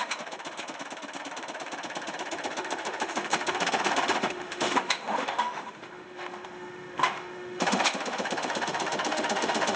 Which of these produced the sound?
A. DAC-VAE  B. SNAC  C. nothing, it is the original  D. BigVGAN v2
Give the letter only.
A